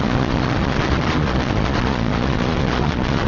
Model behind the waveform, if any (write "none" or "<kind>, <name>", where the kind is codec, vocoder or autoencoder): vocoder, Vocos